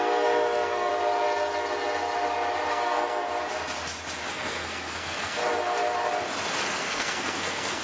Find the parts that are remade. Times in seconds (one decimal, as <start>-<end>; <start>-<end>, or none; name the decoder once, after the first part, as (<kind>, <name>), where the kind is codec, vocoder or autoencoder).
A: 0.0-0.9 (codec, SNAC); 2.7-3.3; 4.3-5.4; 6.8-7.8